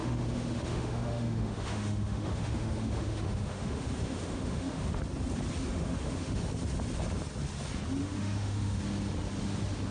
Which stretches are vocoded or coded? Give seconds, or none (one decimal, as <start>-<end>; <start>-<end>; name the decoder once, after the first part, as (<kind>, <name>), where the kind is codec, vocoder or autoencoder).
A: 0.0-5.0 (autoencoder, DAC-VAE); 5.7-6.4; 8.0-8.8